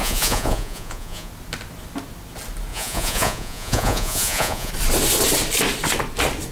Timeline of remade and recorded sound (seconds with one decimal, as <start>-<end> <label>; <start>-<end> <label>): 0.0-1.3 remade; 1.3-2.7 recorded; 2.7-4.7 remade; 4.7-6.5 recorded